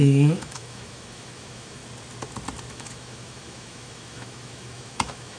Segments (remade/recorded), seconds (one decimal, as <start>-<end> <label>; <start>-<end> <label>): 0.0-1.8 remade; 1.8-2.7 recorded; 2.7-5.4 remade